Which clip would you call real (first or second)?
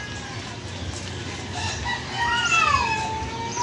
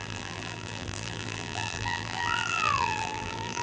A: first